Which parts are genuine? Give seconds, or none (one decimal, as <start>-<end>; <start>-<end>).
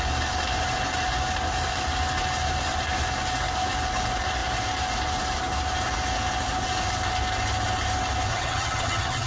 0.0-8.3